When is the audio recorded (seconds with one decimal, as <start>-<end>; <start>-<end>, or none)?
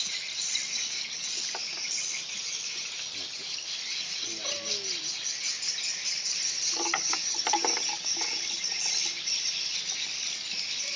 0.0-11.0